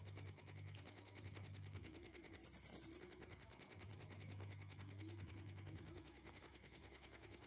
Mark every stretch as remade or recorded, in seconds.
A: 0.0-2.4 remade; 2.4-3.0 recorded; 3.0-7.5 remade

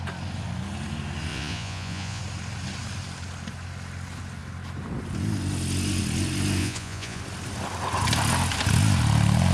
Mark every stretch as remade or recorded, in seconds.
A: 0.0-1.3 recorded; 1.3-2.2 remade; 2.2-6.6 recorded; 6.6-7.2 remade; 7.2-9.5 recorded

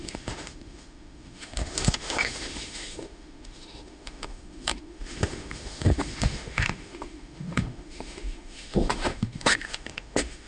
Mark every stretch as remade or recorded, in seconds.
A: 0.0-10.5 remade